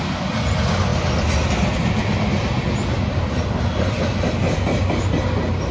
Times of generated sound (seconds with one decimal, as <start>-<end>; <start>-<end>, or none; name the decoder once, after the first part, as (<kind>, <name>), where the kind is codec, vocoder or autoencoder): none